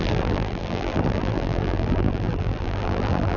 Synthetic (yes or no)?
yes